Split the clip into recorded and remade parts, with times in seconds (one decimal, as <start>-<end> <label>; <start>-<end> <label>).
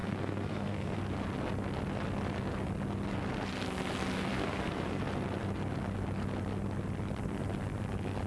0.0-1.0 remade; 1.0-4.3 recorded; 4.3-5.0 remade; 5.0-8.3 recorded